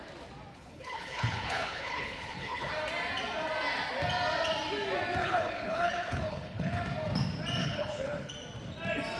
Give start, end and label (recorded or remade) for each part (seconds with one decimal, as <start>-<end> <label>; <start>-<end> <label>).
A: 0.0-0.5 recorded; 0.5-2.7 remade; 2.7-5.2 recorded; 5.2-6.8 remade; 6.8-7.6 recorded; 7.6-8.3 remade; 8.3-9.2 recorded